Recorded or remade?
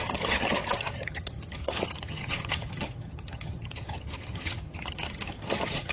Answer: remade